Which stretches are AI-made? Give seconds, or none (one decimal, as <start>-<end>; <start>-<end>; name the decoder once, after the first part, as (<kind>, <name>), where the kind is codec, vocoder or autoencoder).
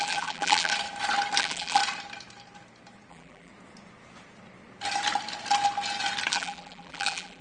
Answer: 0.0-0.7 (vocoder, BigVGAN v2); 1.4-1.8; 3.1-3.5; 6.3-7.4